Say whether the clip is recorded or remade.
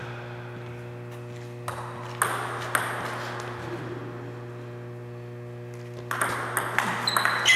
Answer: recorded